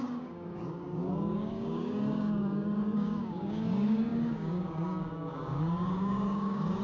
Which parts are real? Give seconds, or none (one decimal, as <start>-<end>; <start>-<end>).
none